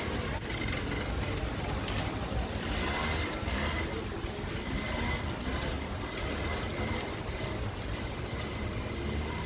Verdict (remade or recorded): recorded